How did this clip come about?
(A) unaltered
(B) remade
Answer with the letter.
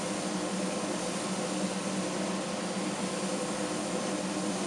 A